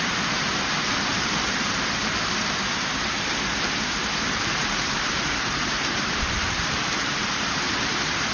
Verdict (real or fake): fake